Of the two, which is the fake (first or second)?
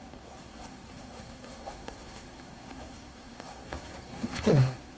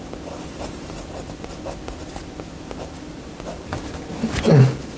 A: first